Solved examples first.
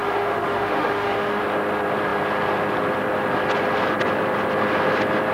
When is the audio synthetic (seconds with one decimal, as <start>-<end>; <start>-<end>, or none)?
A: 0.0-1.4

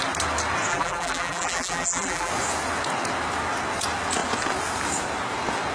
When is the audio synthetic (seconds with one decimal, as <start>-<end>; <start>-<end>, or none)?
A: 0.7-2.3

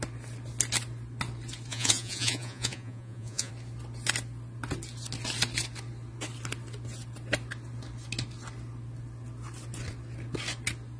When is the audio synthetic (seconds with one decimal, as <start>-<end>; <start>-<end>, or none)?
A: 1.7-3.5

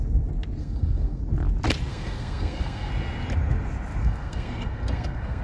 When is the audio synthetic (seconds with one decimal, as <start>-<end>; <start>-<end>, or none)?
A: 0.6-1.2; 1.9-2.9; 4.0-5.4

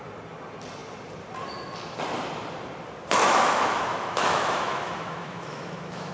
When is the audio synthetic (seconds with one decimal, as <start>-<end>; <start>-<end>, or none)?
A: 3.2-6.1